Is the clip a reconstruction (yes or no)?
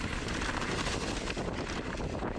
no